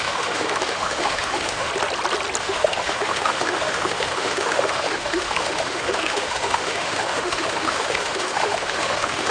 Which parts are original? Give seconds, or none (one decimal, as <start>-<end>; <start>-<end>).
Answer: 1.7-2.4